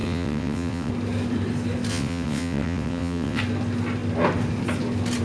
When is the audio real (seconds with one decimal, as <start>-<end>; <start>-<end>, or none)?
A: 0.9-1.9; 3.4-5.2

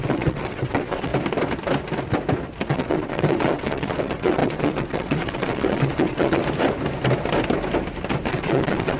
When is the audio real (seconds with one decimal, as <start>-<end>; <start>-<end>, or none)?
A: 1.1-2.7; 6.4-8.3

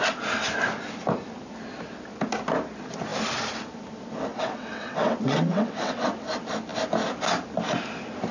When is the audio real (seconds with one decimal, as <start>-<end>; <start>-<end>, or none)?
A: 0.0-4.3; 6.1-8.3